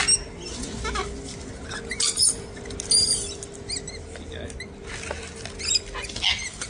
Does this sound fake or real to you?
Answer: real